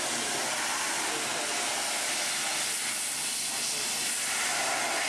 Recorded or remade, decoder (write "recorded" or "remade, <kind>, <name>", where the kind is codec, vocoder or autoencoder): recorded